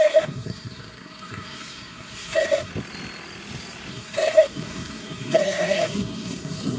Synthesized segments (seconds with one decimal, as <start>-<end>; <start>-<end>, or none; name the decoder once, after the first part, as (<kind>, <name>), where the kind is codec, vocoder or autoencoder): 0.0-2.7 (codec, SNAC); 3.9-6.8